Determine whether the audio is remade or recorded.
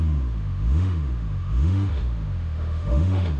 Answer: remade